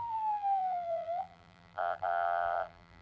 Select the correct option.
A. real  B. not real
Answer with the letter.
B